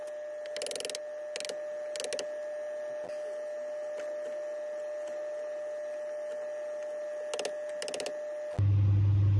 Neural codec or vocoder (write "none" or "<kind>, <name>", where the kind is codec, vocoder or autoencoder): none